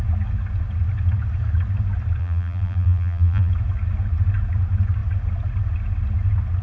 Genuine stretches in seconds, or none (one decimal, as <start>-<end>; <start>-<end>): 0.0-2.2; 3.5-6.6